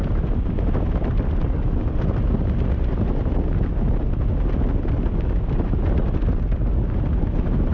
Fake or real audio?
real